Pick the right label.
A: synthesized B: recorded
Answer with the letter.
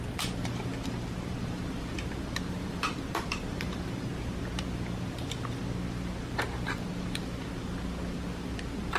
A